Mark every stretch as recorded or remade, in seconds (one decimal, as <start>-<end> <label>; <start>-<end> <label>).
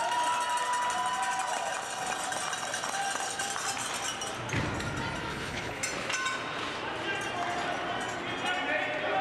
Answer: 0.0-5.3 recorded; 5.3-5.8 remade; 5.8-9.2 recorded